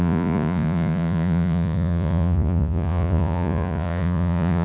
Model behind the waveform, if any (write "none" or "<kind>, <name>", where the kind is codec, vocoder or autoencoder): vocoder, Vocos